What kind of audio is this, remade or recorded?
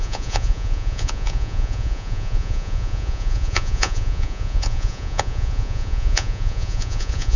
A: remade